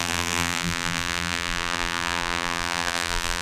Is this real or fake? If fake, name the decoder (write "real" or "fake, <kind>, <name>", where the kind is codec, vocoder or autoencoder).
fake, vocoder, BigVGAN v2